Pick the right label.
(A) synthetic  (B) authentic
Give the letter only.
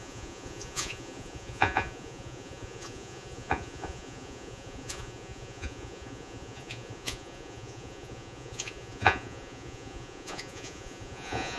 A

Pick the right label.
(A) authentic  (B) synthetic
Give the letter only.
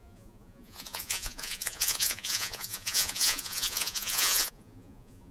B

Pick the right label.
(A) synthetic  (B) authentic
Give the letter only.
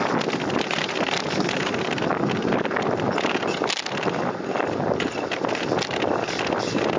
B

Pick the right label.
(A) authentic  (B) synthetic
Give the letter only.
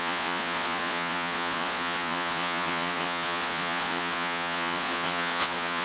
B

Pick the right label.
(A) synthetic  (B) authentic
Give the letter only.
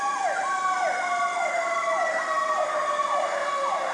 B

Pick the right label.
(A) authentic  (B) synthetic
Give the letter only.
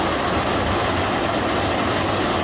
A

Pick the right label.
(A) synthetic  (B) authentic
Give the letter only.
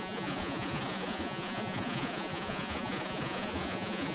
A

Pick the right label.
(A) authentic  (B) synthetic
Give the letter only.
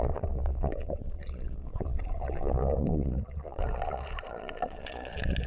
B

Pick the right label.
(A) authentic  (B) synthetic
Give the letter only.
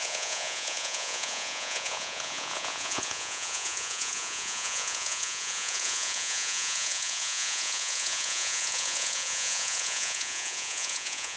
B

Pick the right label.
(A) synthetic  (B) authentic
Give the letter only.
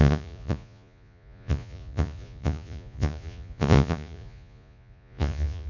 A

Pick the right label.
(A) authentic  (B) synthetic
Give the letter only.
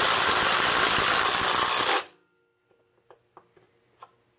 A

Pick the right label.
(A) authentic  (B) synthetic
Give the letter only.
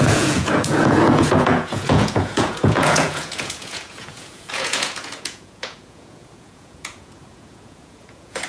B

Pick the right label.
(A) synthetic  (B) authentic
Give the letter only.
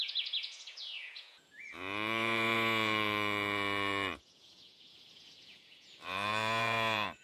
A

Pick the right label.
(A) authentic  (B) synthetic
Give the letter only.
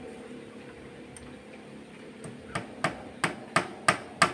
A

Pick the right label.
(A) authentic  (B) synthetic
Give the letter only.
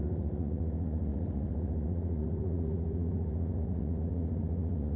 B